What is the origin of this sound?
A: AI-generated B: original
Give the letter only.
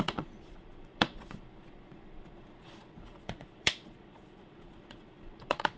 A